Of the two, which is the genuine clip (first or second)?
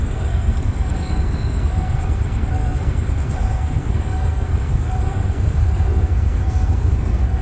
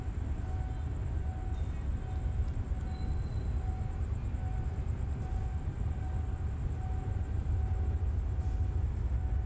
second